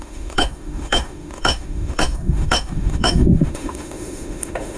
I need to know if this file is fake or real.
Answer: fake